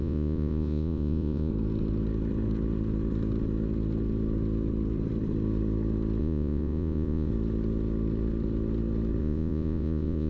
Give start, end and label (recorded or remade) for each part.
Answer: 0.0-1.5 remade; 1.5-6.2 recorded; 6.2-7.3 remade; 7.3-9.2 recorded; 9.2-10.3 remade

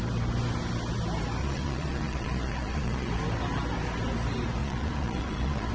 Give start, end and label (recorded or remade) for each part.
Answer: 0.0-1.4 recorded; 1.4-3.1 remade; 3.1-4.6 recorded; 4.6-5.7 remade

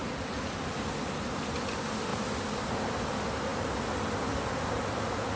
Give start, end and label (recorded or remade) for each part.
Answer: 0.0-5.4 recorded

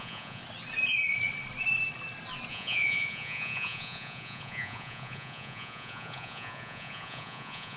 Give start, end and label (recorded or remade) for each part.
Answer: 0.0-0.4 remade; 0.4-2.5 recorded; 2.5-7.8 remade

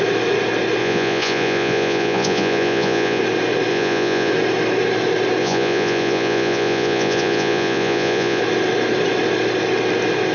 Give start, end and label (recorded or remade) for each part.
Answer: 0.0-0.8 recorded; 0.8-3.2 remade; 3.2-3.7 recorded; 3.7-4.3 remade; 4.3-5.4 recorded; 5.4-8.4 remade; 8.4-10.3 recorded

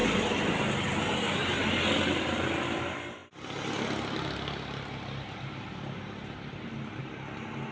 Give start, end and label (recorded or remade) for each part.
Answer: 0.0-7.7 recorded

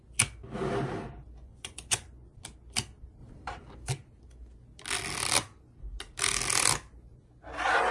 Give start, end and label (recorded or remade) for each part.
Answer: 0.0-1.4 recorded; 1.4-2.3 remade; 2.3-7.9 recorded